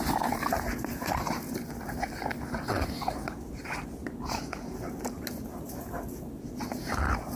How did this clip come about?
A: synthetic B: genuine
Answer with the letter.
B